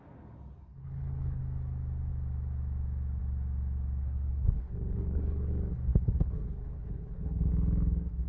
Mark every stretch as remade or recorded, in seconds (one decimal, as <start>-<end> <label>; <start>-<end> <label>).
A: 0.0-0.8 recorded; 0.8-1.4 remade; 1.4-4.0 recorded; 4.0-5.5 remade; 5.5-5.9 recorded; 5.9-7.5 remade; 7.5-8.3 recorded